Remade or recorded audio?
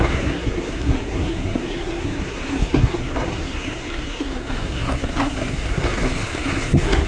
remade